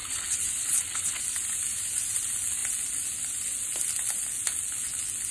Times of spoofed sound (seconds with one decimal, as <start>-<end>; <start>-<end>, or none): 0.0-1.2